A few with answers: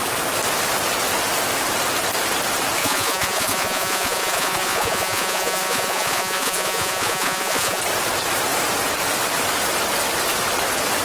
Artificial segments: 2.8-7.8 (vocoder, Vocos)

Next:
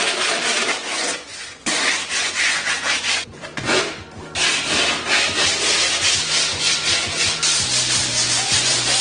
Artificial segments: 0.8-3.8 (vocoder, Vocos); 6.5-7.4; 8.1-9.0

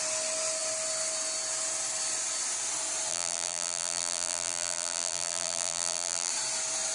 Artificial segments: 3.1-6.3 (vocoder, BigVGAN v2)

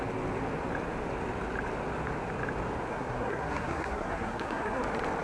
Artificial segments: 2.9-4.8 (codec, SNAC)

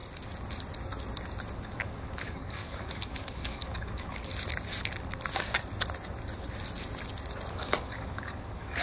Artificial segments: 1.6-4.3 (codec, DAC); 7.5-8.8